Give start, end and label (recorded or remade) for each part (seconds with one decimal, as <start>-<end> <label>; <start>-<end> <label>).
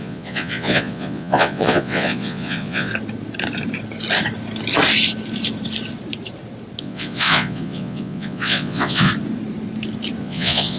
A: 0.0-2.9 remade; 2.9-6.8 recorded; 6.8-9.1 remade; 9.1-10.2 recorded; 10.2-10.8 remade